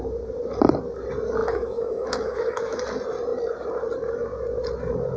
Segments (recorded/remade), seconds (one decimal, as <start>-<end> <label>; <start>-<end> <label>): 0.0-1.4 recorded; 1.4-2.8 remade; 2.8-5.2 recorded